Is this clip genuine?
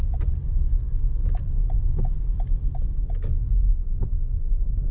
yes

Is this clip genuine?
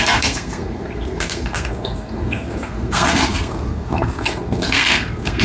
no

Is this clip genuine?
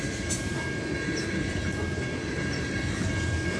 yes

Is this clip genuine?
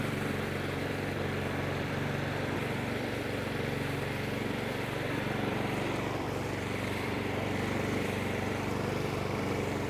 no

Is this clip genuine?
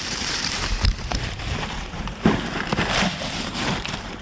no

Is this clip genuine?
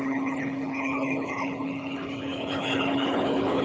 no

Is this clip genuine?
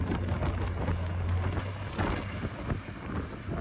yes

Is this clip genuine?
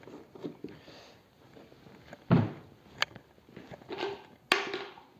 yes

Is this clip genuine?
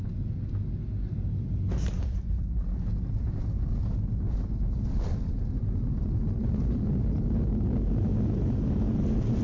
yes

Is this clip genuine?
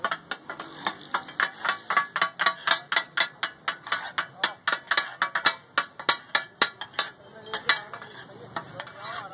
yes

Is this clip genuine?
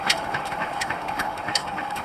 no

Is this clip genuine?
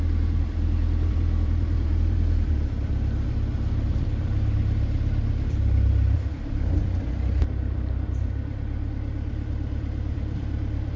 no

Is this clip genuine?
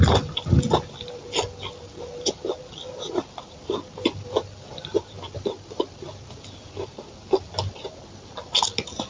yes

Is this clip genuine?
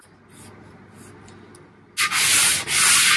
yes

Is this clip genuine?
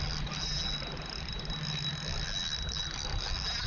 yes